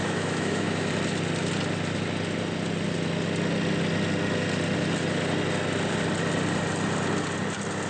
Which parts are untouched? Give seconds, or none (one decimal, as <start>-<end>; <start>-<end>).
0.9-7.9